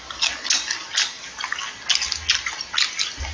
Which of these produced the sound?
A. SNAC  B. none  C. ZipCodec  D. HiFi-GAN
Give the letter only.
B